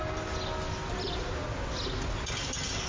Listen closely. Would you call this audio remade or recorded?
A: recorded